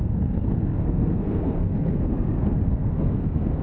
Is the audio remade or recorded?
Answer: remade